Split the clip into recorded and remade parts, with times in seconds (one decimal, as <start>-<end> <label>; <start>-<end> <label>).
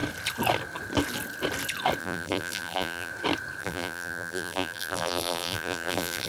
0.0-2.0 recorded; 2.0-3.1 remade; 3.1-3.6 recorded; 3.6-6.3 remade